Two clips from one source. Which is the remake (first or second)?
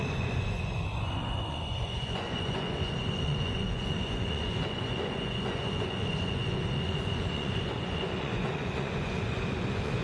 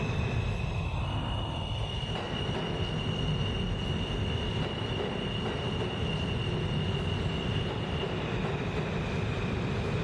first